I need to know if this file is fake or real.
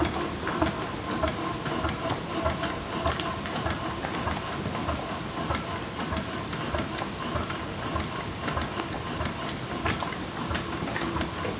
real